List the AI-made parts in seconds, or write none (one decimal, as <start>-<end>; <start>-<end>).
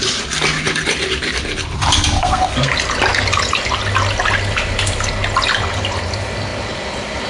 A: 2.2-2.7